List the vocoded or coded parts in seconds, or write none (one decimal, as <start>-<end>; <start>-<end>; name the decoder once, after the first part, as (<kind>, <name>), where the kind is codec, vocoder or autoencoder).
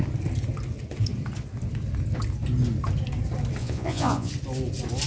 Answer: 3.6-4.3 (vocoder, Vocos)